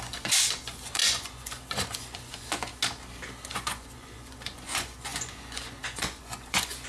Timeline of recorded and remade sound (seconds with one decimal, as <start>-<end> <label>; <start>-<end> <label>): 0.0-2.7 remade; 2.7-3.5 recorded; 3.5-6.9 remade